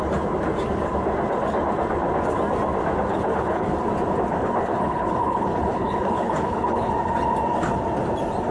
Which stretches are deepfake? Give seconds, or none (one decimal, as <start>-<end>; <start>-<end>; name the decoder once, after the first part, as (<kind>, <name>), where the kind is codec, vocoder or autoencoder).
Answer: 3.1-3.7 (codec, HILCodec); 4.7-6.9